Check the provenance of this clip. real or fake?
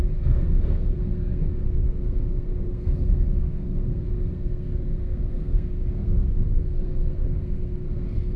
fake